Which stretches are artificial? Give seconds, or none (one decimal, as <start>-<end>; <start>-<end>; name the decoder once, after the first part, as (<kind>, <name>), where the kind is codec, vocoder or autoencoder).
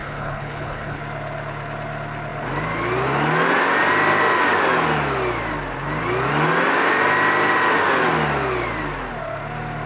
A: 0.0-1.0 (codec, HILCodec)